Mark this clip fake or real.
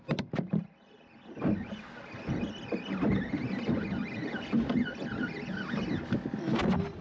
real